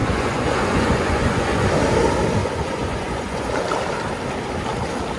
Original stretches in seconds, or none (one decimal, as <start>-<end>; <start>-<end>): 1.7-2.4; 3.5-5.2